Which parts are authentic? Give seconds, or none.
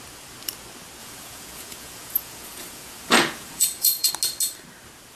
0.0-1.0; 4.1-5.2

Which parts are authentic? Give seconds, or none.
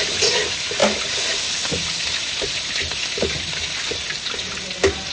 0.0-5.1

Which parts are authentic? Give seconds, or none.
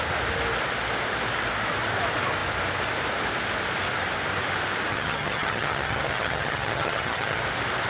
0.0-4.9; 7.4-7.9